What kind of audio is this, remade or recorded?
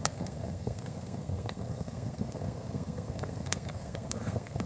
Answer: remade